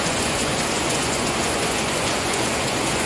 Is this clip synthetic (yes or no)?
yes